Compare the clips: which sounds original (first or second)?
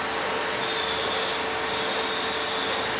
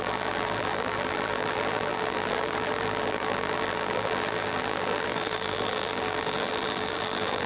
first